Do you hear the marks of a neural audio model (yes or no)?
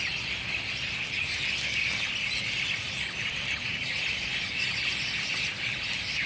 no